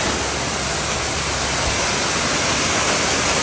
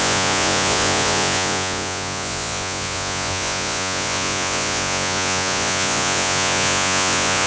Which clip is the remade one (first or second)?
second